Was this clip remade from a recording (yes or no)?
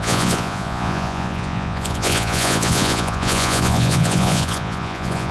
yes